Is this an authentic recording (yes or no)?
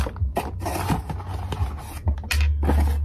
yes